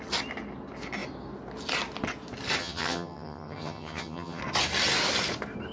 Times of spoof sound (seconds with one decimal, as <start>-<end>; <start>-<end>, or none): 2.6-4.4